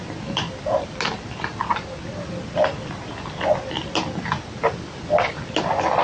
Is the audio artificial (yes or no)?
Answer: no